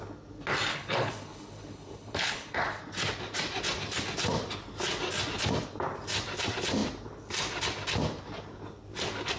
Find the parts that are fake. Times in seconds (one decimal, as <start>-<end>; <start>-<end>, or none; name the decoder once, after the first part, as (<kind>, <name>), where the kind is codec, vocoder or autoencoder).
0.7-2.8 (codec, HILCodec)